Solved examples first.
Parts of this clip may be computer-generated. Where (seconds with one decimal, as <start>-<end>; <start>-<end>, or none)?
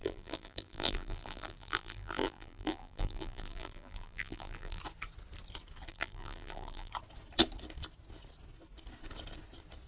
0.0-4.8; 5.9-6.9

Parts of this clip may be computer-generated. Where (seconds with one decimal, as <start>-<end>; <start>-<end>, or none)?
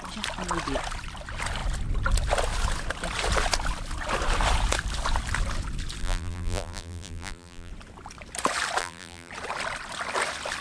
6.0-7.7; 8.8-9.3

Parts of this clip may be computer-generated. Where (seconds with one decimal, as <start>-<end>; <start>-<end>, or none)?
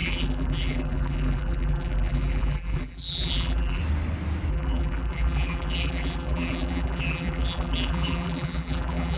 0.0-3.8; 4.5-9.2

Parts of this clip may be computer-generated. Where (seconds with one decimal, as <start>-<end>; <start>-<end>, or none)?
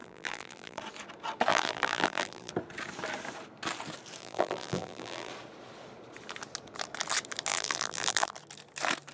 0.0-0.8; 1.5-2.5; 4.2-5.3; 7.5-8.3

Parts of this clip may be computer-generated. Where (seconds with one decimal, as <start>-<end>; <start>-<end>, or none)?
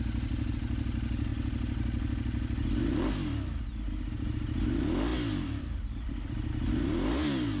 5.1-6.5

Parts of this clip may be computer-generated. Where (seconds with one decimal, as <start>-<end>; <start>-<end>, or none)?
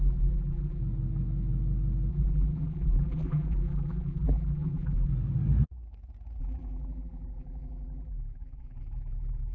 0.0-0.8; 2.1-5.1; 6.4-9.5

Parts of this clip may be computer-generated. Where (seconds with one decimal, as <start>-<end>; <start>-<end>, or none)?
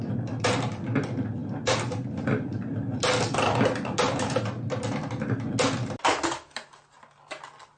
none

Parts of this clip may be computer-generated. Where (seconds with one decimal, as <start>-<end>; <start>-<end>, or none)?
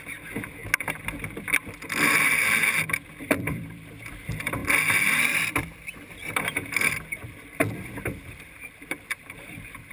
0.0-0.6; 3.2-4.6; 5.6-9.9